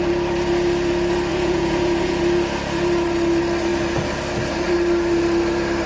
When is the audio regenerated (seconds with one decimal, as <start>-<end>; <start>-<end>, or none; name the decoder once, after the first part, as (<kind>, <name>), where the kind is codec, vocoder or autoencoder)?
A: 1.3-2.2 (vocoder, Vocos)